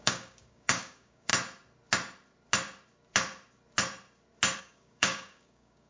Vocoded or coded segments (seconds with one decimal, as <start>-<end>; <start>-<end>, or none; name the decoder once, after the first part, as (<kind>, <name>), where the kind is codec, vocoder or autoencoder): 0.0-1.3 (codec, DAC); 4.6-5.9